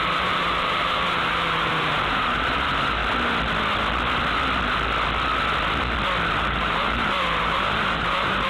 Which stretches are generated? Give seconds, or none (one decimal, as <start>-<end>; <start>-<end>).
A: 0.0-3.0; 6.3-8.5